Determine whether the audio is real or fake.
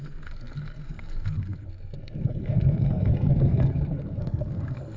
fake